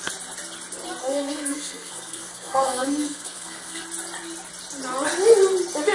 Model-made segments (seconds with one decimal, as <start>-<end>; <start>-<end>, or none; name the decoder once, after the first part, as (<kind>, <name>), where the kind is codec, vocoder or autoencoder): 1.0-3.8 (codec, SNAC)